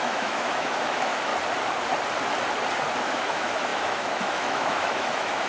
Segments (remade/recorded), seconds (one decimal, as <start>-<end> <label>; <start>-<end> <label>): 0.0-1.3 remade; 1.3-3.0 recorded; 3.0-5.5 remade